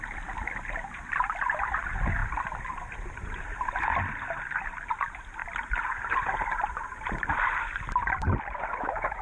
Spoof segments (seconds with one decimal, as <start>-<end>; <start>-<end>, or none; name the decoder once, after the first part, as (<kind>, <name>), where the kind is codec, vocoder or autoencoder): 8.7-9.2 (autoencoder, DAC-VAE)